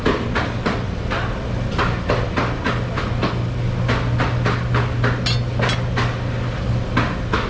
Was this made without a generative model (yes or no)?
yes